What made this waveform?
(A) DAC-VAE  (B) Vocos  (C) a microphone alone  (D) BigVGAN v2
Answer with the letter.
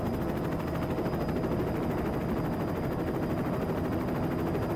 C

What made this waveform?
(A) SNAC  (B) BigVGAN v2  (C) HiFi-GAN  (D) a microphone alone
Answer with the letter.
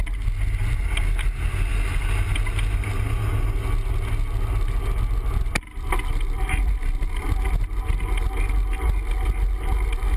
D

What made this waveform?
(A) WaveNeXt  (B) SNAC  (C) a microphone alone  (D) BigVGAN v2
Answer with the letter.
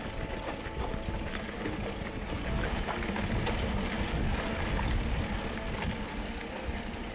C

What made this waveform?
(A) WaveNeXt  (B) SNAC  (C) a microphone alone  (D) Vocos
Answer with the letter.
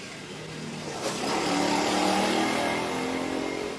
C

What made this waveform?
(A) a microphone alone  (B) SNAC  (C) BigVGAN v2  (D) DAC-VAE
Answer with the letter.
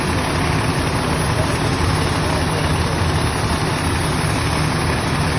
A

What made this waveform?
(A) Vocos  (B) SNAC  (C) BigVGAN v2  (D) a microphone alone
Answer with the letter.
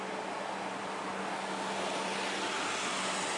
D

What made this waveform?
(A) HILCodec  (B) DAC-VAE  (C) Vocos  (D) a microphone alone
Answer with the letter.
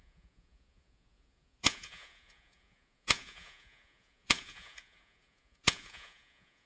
C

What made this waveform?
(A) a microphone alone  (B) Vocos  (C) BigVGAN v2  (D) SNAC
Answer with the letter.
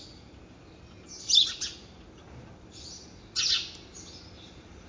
A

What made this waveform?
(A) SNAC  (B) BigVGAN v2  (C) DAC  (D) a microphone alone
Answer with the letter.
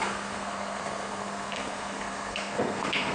A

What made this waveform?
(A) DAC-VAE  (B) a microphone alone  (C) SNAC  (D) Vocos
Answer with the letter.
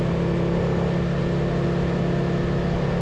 B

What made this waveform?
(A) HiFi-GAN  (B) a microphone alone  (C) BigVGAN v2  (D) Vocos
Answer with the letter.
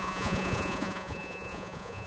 D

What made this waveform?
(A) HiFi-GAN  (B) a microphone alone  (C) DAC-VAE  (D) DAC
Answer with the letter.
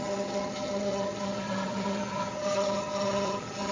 A